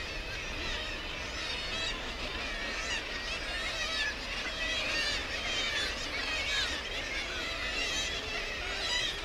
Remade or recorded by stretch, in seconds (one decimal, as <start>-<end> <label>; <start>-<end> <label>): 0.0-9.2 recorded